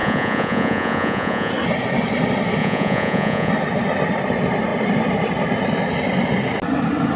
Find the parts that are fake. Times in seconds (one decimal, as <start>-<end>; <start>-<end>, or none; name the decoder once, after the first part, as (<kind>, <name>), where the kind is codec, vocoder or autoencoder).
0.0-1.5 (vocoder, Vocos); 2.6-3.5